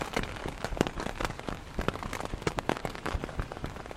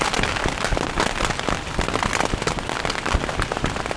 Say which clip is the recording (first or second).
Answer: second